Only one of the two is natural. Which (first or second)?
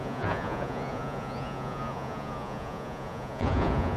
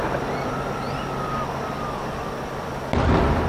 second